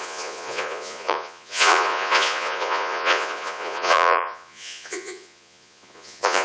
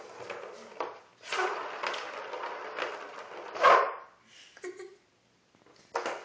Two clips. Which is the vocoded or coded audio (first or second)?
first